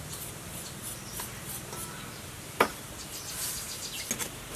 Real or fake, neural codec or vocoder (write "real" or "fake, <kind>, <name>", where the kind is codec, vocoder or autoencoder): real